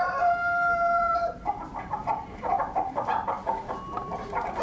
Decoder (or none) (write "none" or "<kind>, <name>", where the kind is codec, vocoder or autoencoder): vocoder, BigVGAN v2